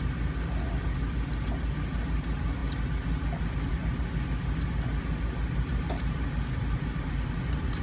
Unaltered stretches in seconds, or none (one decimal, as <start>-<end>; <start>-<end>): 0.0-5.7